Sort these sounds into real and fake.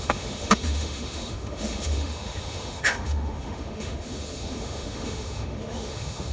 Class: fake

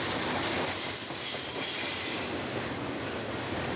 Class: real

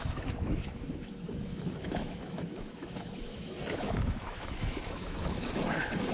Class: fake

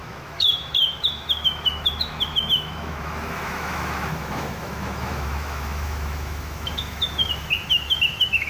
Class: fake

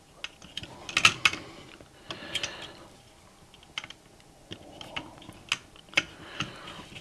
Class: real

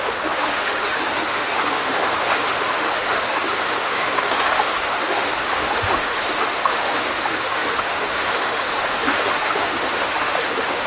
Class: fake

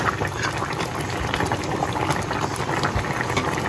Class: real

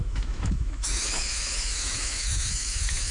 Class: fake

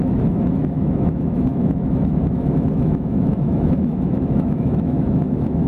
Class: fake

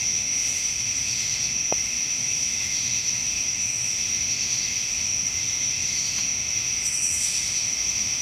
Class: fake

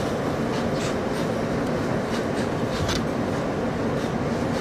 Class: real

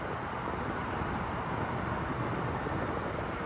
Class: real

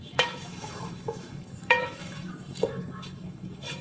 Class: fake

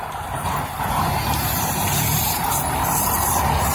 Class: real